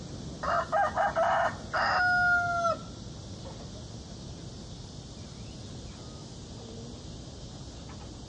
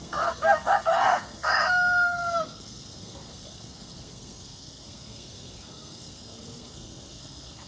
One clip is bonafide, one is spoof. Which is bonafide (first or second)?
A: first